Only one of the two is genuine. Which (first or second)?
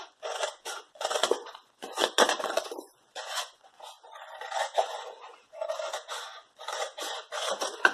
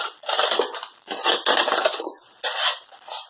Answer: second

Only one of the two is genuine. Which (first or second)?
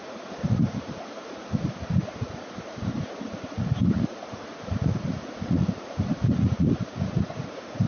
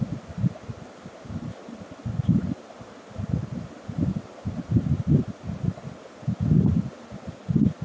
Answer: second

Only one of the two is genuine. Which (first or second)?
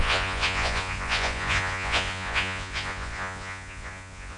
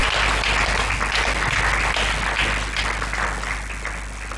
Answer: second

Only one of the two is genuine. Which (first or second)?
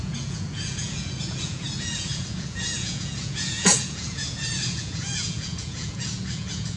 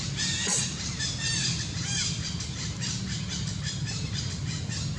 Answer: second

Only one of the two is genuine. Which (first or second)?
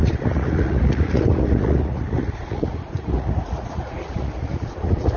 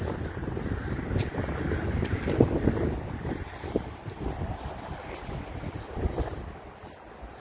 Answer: second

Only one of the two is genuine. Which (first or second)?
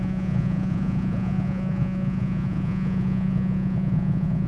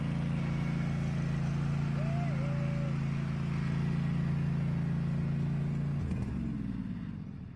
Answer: second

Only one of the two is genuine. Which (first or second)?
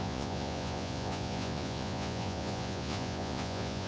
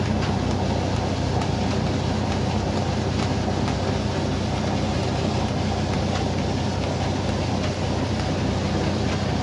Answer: second